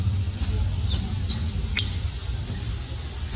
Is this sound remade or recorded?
recorded